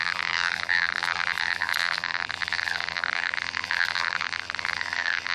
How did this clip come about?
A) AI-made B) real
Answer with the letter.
A